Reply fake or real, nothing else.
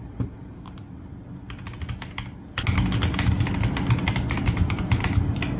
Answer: real